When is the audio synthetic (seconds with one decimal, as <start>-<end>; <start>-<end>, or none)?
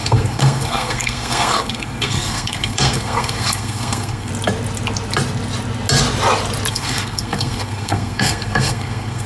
0.0-4.3; 6.7-9.3